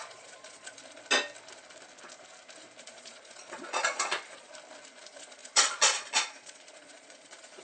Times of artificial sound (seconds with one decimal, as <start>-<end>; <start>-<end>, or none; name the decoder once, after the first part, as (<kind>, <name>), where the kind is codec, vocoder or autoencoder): 0.0-0.8 (vocoder, Vocos); 2.8-4.5; 5.0-7.6